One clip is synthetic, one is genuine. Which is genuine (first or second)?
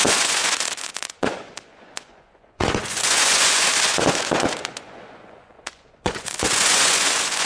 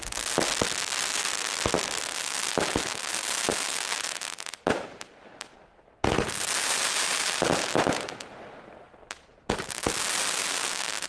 second